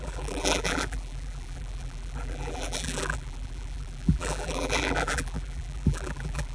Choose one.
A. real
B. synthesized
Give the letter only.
B